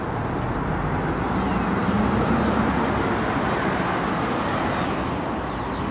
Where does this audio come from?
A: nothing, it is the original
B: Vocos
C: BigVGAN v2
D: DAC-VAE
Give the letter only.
A